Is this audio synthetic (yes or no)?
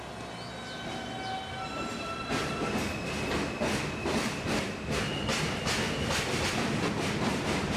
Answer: no